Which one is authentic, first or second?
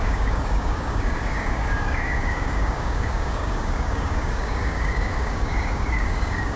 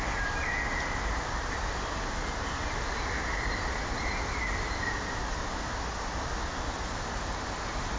second